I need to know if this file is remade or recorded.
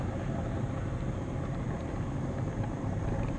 recorded